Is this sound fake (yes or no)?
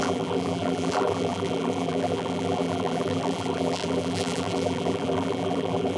yes